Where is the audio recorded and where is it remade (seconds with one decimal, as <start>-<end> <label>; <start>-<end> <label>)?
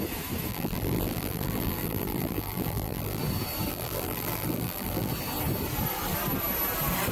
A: 0.0-0.5 recorded; 0.5-3.2 remade; 3.2-3.7 recorded; 3.7-5.1 remade; 5.1-7.1 recorded